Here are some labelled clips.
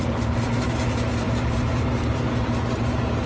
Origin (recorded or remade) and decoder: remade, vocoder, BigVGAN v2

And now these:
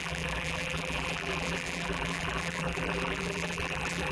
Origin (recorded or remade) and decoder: remade, vocoder, BigVGAN v2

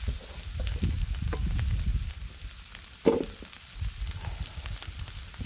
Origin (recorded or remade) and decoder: recorded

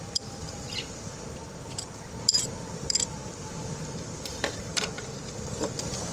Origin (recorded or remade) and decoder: remade, vocoder, BigVGAN v2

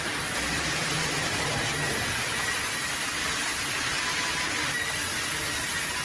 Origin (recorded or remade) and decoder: recorded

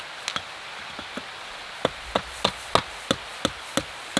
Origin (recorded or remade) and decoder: recorded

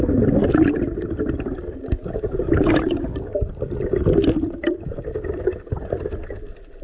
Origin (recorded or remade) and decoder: remade, vocoder, BigVGAN v2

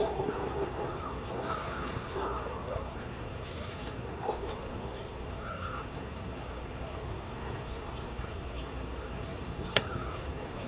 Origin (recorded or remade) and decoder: remade, codec, SNAC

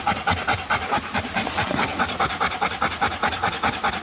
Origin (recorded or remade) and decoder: recorded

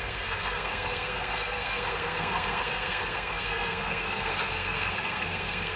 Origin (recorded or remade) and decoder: remade, codec, SNAC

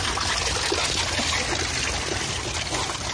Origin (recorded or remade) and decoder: recorded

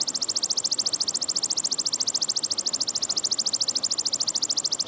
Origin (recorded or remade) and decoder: recorded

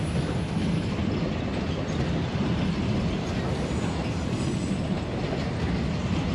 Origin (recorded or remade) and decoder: recorded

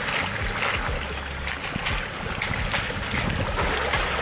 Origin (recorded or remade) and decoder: recorded